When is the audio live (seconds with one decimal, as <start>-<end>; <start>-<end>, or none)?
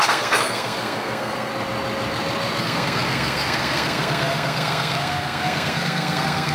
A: 1.5-2.6